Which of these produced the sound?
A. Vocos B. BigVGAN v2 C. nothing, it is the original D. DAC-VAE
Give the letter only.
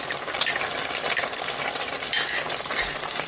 C